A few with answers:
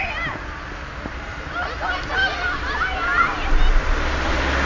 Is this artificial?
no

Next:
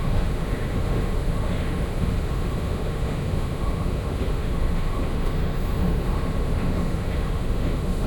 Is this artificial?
yes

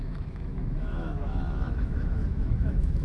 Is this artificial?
yes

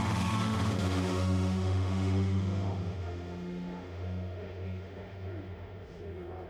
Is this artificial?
yes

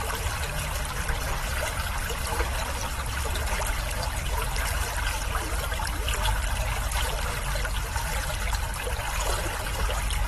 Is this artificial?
no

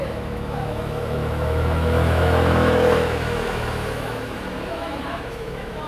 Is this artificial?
yes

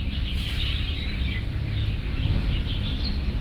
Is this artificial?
no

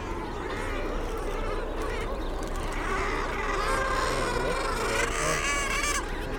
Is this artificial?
no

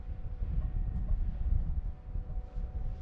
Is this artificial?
no